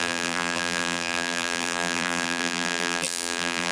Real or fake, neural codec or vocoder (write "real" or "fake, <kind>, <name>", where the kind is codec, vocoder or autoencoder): fake, vocoder, BigVGAN v2